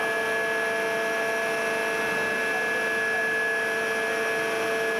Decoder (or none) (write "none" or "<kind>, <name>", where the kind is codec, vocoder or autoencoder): none